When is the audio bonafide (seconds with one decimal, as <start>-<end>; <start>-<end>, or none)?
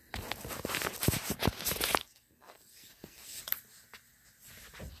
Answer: 0.0-2.0; 3.4-5.0